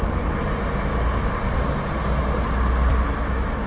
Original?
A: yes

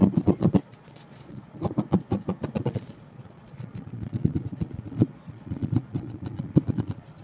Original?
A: no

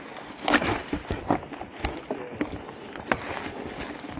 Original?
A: yes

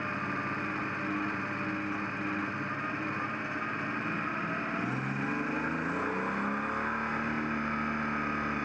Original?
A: yes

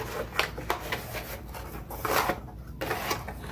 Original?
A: yes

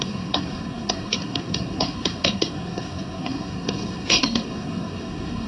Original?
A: no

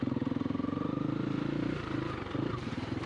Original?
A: no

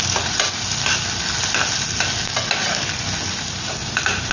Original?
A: yes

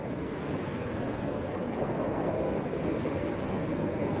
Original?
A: no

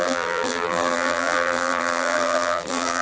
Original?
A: no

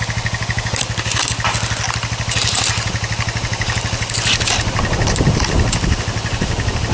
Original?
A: yes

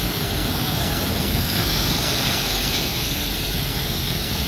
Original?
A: no